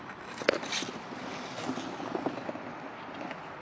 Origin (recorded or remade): recorded